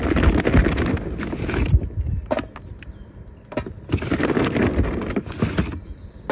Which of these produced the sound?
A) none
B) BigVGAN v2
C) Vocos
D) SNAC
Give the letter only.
A